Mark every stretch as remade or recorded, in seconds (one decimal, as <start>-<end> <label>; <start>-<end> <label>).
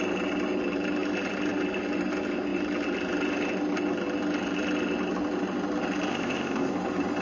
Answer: 0.0-6.1 recorded; 6.1-6.7 remade; 6.7-7.2 recorded